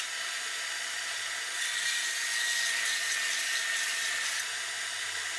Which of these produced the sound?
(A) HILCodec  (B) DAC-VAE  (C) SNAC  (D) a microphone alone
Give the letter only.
D